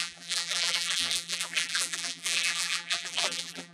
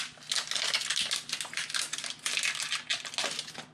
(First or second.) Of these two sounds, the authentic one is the second